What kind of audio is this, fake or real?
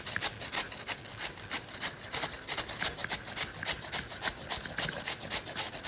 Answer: real